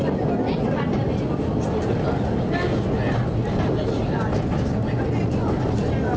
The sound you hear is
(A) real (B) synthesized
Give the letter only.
A